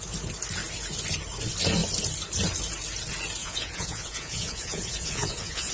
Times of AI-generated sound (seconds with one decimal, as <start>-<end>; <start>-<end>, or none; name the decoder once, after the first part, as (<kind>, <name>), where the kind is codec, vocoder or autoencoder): 3.4-5.7 (vocoder, Vocos)